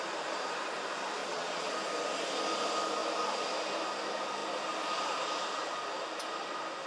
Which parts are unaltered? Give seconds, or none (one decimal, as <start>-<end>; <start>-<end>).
0.0-1.2; 1.7-6.9